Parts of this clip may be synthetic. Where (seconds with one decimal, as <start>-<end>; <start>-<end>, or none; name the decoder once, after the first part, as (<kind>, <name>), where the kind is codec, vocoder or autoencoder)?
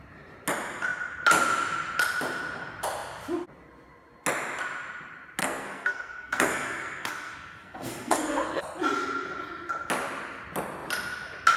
5.4-8.6 (codec, SNAC)